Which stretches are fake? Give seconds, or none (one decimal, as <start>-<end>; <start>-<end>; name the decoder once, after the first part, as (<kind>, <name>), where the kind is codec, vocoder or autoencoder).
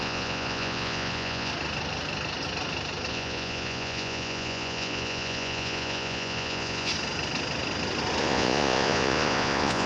0.0-1.5 (vocoder, Vocos); 3.1-6.9; 8.2-9.9